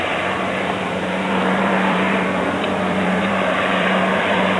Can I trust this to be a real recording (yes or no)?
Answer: no